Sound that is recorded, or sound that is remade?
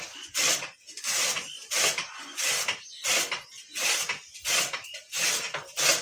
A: recorded